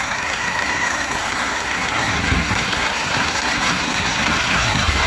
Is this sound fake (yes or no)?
yes